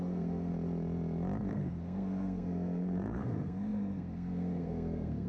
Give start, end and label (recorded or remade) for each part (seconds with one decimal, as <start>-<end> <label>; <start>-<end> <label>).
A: 0.0-0.5 remade; 0.5-1.5 recorded; 1.5-5.3 remade